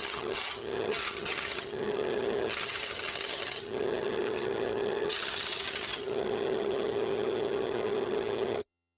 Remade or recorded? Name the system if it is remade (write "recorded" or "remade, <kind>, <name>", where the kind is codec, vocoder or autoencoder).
remade, vocoder, HiFi-GAN